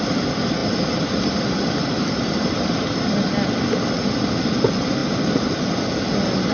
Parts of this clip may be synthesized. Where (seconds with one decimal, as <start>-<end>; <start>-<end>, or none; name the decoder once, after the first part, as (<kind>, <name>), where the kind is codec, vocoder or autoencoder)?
none